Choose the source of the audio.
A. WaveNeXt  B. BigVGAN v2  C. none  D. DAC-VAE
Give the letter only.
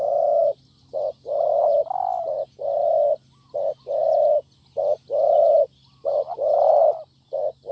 C